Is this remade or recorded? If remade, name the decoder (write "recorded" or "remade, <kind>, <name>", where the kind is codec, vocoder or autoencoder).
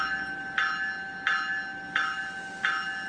recorded